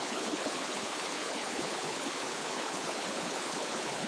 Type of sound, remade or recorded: remade